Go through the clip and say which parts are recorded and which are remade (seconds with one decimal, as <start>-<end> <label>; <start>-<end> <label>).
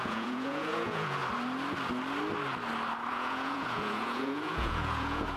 0.0-1.2 remade; 1.2-3.1 recorded; 3.1-5.4 remade